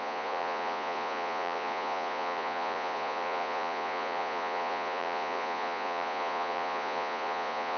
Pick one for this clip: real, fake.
fake